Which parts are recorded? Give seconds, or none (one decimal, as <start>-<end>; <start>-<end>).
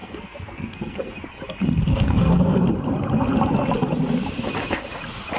1.1-1.9; 2.7-5.4